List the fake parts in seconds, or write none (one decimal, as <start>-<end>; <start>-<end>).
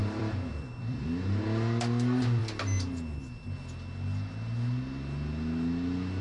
0.0-1.4